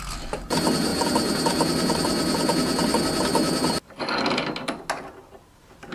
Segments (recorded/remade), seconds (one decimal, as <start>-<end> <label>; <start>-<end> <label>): 0.0-5.9 recorded